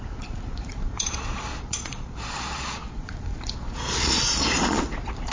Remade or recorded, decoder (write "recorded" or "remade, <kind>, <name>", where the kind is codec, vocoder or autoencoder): remade, vocoder, Vocos